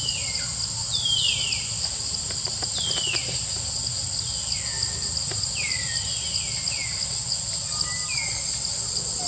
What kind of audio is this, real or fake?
real